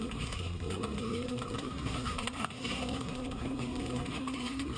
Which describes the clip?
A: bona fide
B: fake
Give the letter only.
B